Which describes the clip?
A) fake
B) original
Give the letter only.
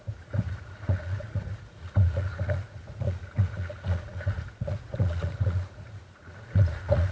A